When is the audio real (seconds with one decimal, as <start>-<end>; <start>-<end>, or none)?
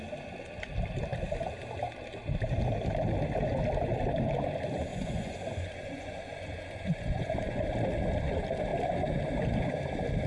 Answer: 0.0-4.9; 7.6-10.3